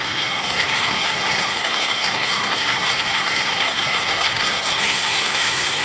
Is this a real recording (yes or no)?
no